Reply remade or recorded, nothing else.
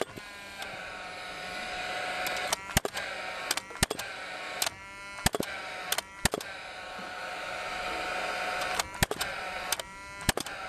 recorded